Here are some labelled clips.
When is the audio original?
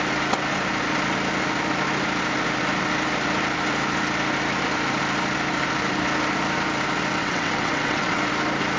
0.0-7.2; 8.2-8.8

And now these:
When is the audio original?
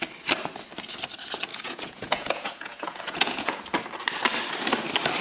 0.0-1.5; 3.6-5.2